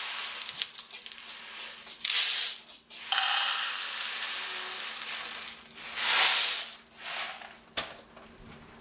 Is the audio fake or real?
real